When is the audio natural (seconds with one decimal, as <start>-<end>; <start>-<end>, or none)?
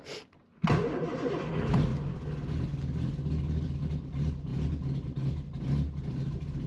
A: 0.0-4.5; 5.3-6.7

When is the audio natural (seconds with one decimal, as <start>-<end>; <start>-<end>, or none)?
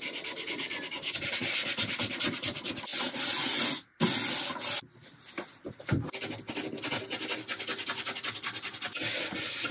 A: 0.0-9.7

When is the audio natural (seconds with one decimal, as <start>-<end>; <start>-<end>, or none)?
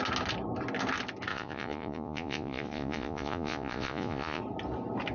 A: 0.0-1.3; 4.4-5.1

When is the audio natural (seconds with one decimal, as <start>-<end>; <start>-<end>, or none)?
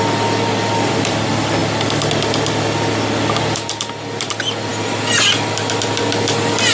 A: 0.0-6.7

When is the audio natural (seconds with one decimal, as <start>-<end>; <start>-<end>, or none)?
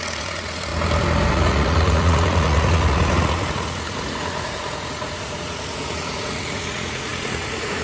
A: 0.7-1.3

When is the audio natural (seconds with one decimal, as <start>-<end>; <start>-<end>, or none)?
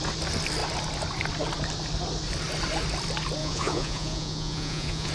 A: 0.0-3.4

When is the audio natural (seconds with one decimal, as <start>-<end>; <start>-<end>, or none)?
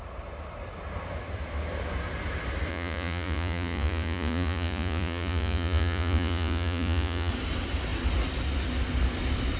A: 0.0-2.7; 7.3-9.6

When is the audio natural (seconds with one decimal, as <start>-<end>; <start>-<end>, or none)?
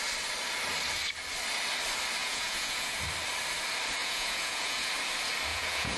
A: 0.0-2.2; 3.0-4.0; 4.9-5.5